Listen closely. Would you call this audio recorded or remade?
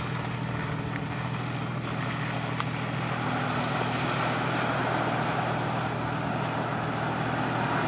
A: recorded